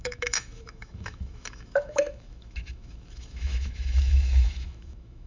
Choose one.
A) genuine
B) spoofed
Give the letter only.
B